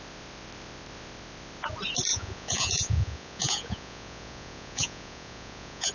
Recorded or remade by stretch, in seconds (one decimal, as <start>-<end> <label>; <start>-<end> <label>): 0.0-2.1 recorded; 2.1-5.9 remade